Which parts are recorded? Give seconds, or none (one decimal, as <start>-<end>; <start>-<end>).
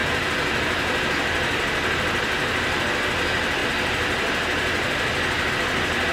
2.8-6.1